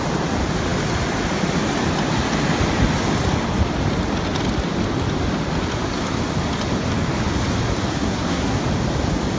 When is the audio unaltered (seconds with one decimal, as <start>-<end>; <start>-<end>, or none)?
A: 0.0-7.9; 8.6-9.4